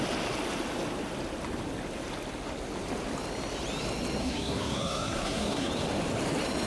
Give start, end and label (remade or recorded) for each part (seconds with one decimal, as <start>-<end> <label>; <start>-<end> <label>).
0.0-4.2 recorded; 4.2-5.7 remade; 5.7-6.7 recorded